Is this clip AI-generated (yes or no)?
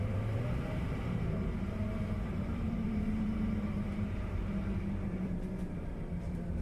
yes